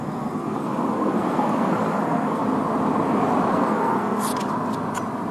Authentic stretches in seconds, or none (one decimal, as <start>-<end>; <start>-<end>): 2.4-3.5; 4.3-5.3